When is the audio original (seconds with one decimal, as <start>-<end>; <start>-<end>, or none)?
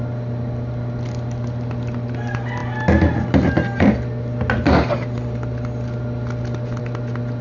0.0-7.4